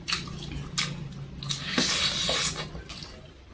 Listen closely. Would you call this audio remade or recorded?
recorded